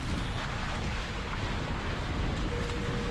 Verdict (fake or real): real